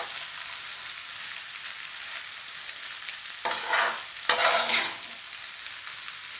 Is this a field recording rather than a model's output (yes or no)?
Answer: yes